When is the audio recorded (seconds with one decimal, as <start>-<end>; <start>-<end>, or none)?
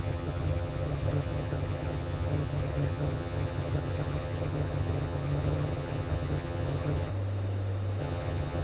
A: 7.1-8.0